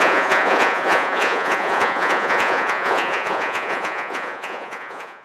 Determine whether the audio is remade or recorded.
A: remade